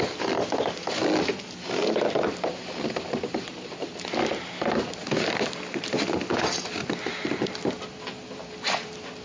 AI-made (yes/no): no